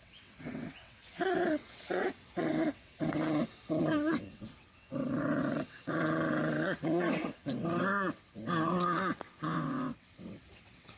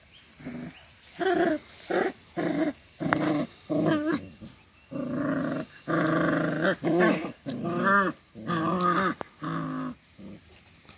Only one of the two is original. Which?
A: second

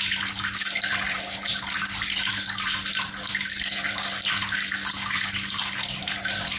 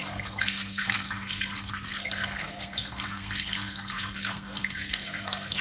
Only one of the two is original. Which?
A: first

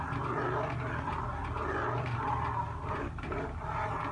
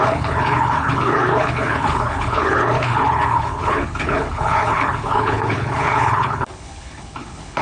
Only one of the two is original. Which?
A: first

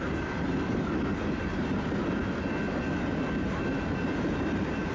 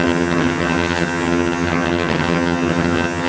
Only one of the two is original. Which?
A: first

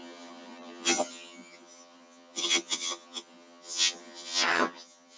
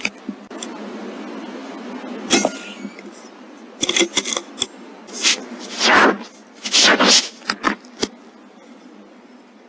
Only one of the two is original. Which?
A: second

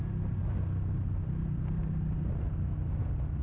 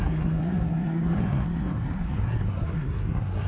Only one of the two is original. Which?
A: first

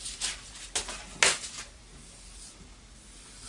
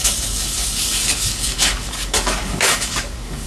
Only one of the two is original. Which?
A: first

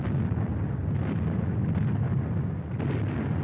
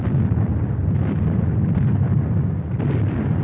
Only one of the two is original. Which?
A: first